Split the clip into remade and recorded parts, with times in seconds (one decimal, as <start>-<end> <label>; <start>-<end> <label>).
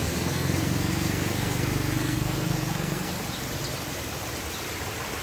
0.0-3.1 remade; 3.1-5.2 recorded